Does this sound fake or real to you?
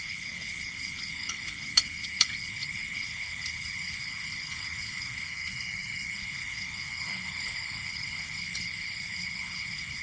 fake